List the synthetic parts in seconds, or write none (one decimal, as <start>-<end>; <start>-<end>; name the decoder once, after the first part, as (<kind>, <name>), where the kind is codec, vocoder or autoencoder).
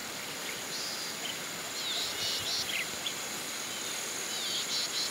none